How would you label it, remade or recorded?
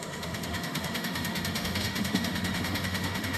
remade